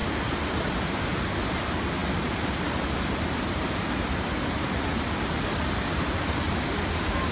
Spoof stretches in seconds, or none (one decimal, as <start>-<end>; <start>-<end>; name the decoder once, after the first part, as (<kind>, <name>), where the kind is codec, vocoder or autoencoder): none